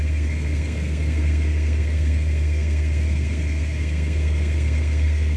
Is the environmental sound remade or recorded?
remade